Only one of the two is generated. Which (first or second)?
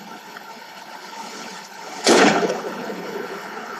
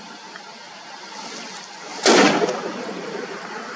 first